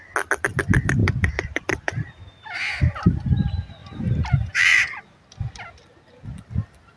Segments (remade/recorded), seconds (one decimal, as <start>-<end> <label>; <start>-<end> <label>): 0.0-1.0 recorded; 1.0-2.7 remade; 2.7-3.8 recorded; 3.8-5.0 remade; 5.0-7.0 recorded